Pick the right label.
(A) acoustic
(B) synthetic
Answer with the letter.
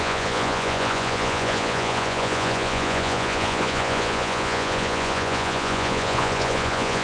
B